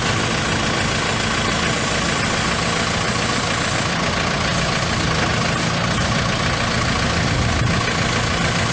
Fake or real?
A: real